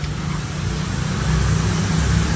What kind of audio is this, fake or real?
real